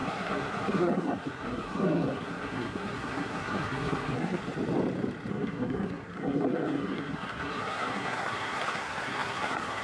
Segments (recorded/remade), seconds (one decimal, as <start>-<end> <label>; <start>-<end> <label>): 0.0-4.4 remade; 4.4-5.3 recorded; 5.3-9.8 remade